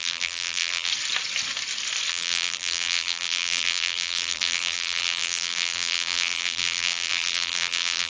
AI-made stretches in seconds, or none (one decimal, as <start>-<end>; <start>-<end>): 0.0-0.9; 2.1-8.1